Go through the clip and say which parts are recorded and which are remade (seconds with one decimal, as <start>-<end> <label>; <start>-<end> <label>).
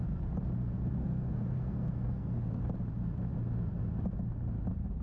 0.0-1.0 recorded; 1.0-2.6 remade; 2.6-5.0 recorded